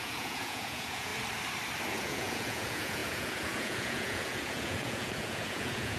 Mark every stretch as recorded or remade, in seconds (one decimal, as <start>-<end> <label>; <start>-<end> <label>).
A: 0.0-1.1 remade; 1.1-1.9 recorded; 1.9-6.0 remade